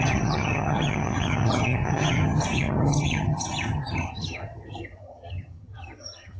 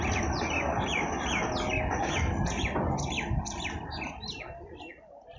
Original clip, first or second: second